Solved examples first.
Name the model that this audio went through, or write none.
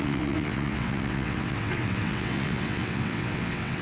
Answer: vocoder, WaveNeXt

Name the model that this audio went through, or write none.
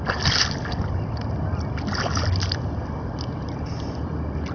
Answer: none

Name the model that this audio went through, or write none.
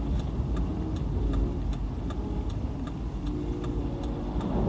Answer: none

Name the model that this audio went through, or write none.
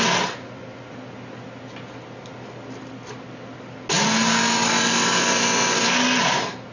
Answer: none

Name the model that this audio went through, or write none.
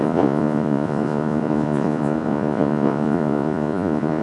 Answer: vocoder, Vocos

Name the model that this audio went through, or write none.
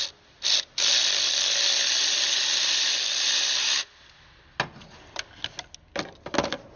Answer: none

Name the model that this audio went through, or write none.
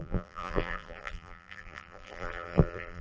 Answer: vocoder, BigVGAN v2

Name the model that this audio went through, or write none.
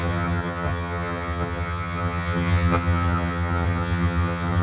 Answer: vocoder, HiFi-GAN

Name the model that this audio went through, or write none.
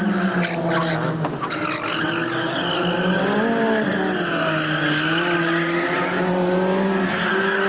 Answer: none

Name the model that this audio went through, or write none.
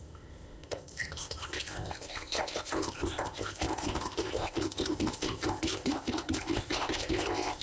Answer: codec, ZipCodec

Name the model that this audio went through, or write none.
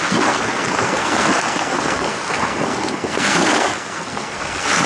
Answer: codec, SNAC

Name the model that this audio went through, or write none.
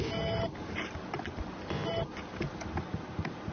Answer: none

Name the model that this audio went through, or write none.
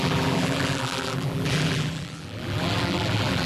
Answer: vocoder, BigVGAN v2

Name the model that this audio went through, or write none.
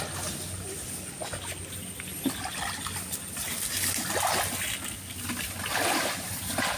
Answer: none